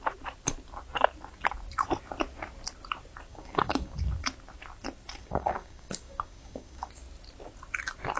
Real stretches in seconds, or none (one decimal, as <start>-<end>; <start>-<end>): 0.0-3.3; 4.0-5.2; 6.9-8.2